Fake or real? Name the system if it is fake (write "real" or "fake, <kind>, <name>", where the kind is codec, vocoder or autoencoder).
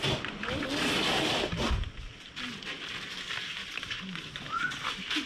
real